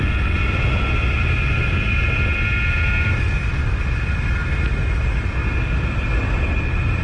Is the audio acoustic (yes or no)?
yes